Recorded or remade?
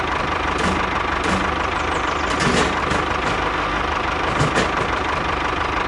remade